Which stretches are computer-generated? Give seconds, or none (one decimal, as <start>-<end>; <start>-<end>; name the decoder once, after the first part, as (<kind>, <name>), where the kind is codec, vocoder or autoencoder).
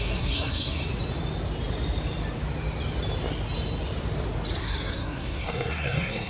0.0-0.8 (codec, SNAC); 4.6-6.3